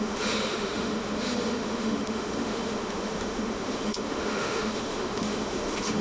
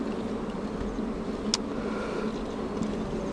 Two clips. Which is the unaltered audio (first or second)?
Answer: second